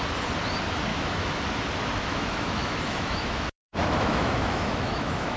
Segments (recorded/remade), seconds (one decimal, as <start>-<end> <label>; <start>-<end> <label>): 0.0-0.9 recorded; 0.9-1.4 remade; 1.4-2.1 recorded; 2.1-5.4 remade